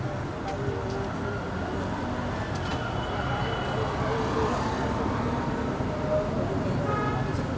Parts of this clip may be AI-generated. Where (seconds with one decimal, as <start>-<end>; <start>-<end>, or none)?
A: none